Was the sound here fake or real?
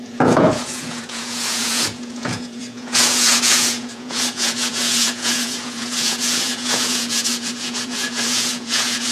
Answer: fake